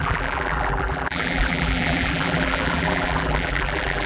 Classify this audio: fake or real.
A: fake